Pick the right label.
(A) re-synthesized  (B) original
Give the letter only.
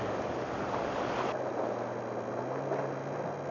B